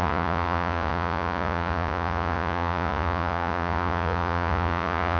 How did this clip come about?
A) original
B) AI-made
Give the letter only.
B